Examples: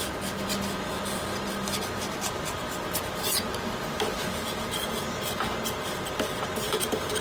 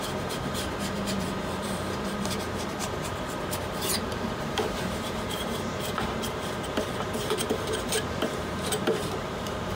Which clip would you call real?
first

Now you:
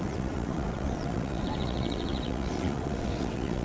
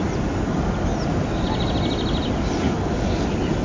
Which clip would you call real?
second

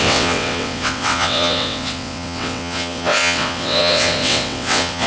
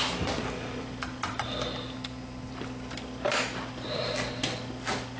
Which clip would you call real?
second